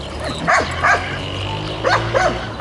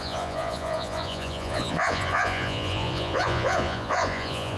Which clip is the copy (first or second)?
second